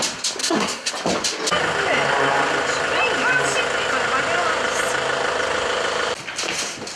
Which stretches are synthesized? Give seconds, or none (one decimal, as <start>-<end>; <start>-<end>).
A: 0.4-0.9